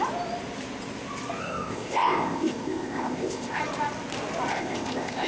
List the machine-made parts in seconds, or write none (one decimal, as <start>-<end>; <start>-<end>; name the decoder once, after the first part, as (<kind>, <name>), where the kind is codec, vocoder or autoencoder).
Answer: 1.4-3.6 (codec, ZipCodec); 4.5-5.3